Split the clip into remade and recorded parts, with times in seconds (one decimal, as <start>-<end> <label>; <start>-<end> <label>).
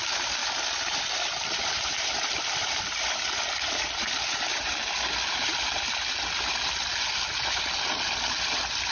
0.0-4.5 recorded; 4.5-5.1 remade; 5.1-8.9 recorded